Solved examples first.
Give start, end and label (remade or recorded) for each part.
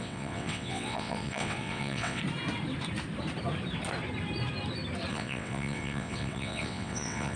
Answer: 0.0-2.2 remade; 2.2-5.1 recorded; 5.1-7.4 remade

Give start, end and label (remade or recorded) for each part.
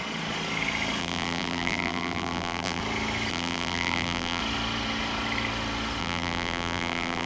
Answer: 0.0-1.0 recorded; 1.0-2.8 remade; 2.8-3.3 recorded; 3.3-4.4 remade; 4.4-6.0 recorded; 6.0-7.3 remade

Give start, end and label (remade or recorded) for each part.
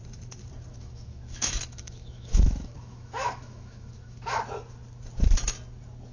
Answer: 0.0-0.7 recorded; 0.7-4.4 remade; 4.4-6.1 recorded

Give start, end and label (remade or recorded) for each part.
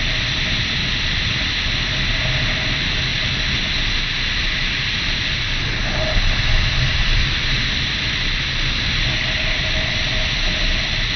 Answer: 0.0-11.2 recorded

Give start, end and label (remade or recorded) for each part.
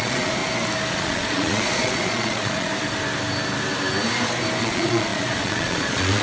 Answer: 0.0-0.4 remade; 0.4-0.9 recorded; 0.9-2.7 remade; 2.7-4.6 recorded; 4.6-6.2 remade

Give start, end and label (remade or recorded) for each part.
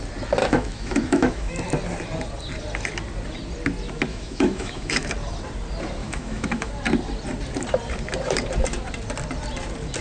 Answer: 0.0-0.4 recorded; 0.4-1.5 remade; 1.5-4.1 recorded; 4.1-5.1 remade; 5.1-6.0 recorded; 6.0-6.7 remade; 6.7-10.0 recorded